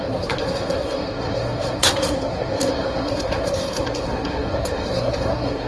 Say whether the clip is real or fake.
fake